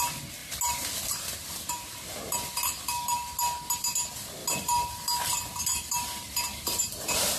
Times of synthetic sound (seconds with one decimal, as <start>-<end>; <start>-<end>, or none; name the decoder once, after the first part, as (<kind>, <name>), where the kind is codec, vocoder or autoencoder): none